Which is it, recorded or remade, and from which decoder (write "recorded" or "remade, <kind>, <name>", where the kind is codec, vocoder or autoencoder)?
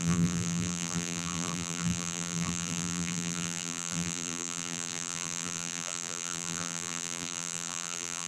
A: remade, vocoder, BigVGAN v2